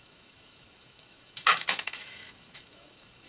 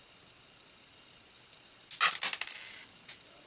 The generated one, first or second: first